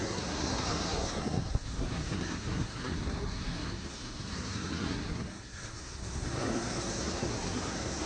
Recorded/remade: remade